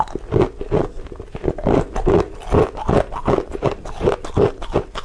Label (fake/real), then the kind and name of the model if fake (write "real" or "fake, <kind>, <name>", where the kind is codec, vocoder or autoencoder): real